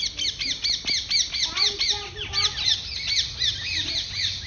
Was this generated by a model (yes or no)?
no